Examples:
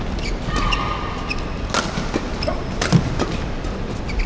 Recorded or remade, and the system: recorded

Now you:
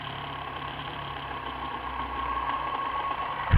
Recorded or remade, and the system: remade, vocoder, BigVGAN v2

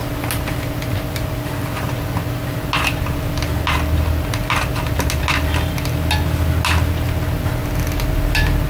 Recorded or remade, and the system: recorded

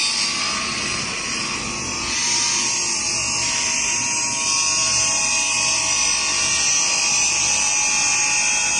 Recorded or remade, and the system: recorded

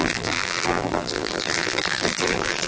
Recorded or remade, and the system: remade, vocoder, BigVGAN v2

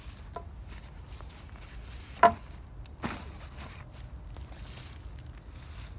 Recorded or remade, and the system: recorded